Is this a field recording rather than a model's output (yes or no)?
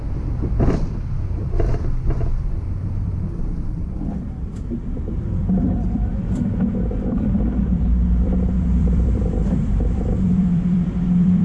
no